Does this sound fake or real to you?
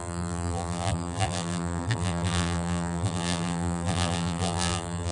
fake